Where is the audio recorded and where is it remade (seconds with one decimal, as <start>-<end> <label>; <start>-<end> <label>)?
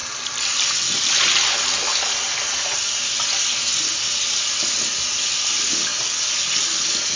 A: 0.0-7.2 recorded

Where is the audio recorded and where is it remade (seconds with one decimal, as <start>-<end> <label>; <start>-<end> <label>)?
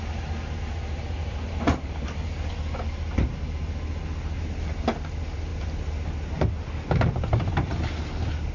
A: 0.0-1.2 recorded; 1.2-2.5 remade; 2.5-8.5 recorded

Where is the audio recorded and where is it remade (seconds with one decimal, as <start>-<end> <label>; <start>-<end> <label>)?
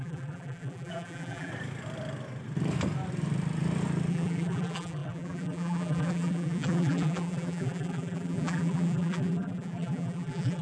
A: 0.0-1.5 remade; 1.5-4.1 recorded; 4.1-10.6 remade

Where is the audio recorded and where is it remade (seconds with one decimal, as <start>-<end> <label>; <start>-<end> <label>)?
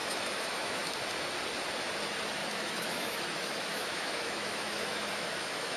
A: 0.0-0.9 remade; 0.9-2.4 recorded; 2.4-5.8 remade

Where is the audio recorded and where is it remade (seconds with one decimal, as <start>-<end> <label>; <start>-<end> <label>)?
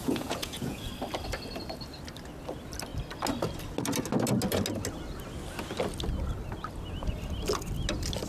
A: 0.0-0.9 remade; 0.9-8.3 recorded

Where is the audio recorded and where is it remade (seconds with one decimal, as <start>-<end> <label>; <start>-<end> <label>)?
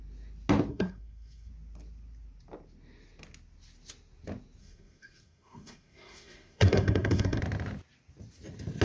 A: 0.0-0.7 recorded; 0.7-1.5 remade; 1.5-4.6 recorded; 4.6-7.4 remade; 7.4-8.8 recorded